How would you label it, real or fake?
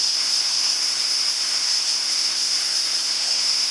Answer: fake